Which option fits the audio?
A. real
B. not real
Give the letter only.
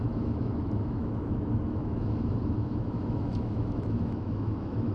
B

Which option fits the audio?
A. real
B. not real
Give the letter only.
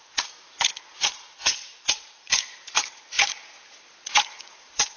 B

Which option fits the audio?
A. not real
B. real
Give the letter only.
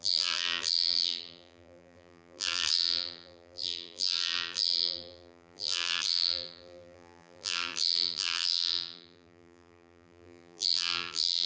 A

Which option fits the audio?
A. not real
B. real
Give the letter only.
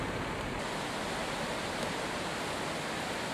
B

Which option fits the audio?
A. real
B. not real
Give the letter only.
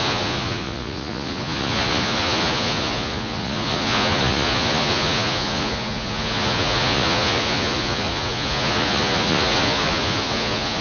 B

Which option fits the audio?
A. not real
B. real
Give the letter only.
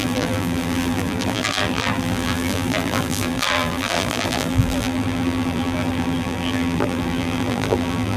A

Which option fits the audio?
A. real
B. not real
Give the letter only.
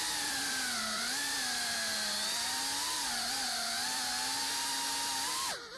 B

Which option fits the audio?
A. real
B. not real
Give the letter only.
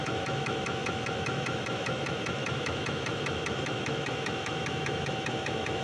B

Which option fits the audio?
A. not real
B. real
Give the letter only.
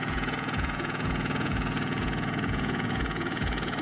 A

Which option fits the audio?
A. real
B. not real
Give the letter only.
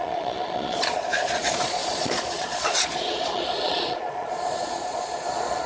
B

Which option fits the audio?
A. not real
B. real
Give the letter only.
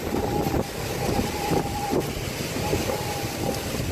B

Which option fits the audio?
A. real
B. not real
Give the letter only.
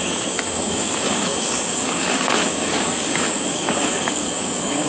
B